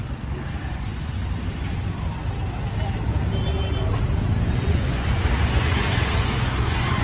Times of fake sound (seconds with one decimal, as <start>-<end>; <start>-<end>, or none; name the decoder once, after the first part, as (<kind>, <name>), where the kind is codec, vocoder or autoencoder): 0.7-1.2 (vocoder, Vocos); 4.7-7.0